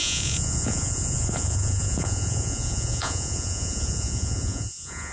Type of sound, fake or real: fake